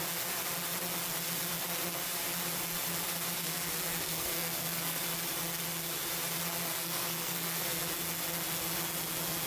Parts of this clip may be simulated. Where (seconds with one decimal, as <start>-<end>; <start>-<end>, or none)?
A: 3.4-5.0; 6.7-7.9